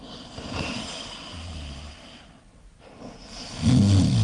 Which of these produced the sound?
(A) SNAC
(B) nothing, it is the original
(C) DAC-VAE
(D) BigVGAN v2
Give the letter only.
B